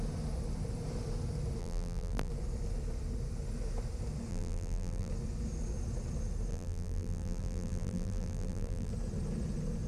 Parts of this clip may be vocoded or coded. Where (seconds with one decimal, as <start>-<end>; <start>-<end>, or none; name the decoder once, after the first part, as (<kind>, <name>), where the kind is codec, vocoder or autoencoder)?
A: 1.6-2.3 (vocoder, BigVGAN v2); 4.3-5.1; 6.5-8.9